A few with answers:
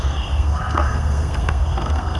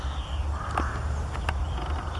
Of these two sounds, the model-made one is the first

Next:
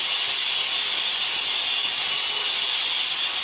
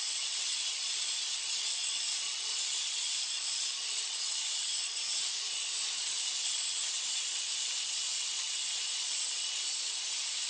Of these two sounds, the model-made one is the second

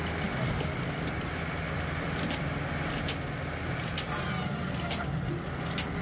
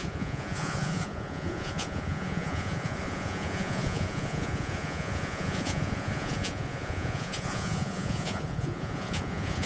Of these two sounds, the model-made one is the second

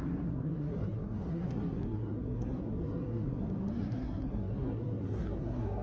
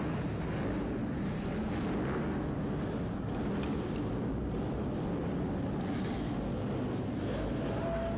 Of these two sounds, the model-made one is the first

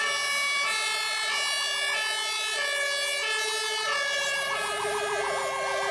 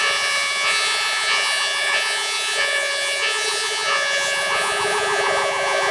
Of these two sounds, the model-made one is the second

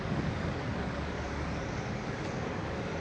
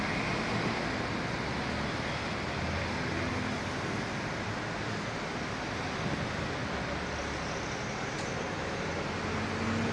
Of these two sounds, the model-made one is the first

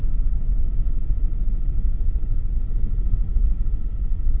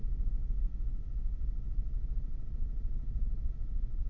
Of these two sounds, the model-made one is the first